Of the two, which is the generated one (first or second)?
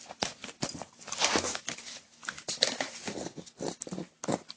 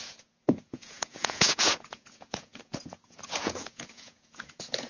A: second